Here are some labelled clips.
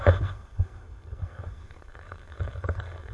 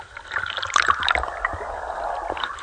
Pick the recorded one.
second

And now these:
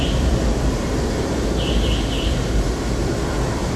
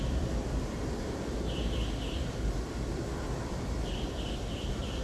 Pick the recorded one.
first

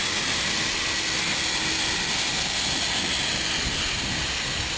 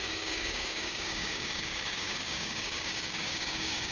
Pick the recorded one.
first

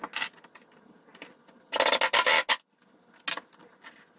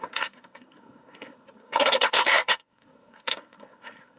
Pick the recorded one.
first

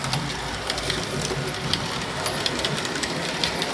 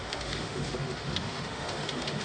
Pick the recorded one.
first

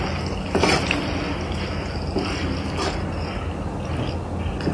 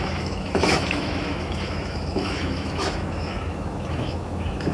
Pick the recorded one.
first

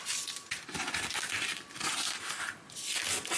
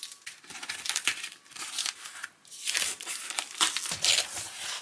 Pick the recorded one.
first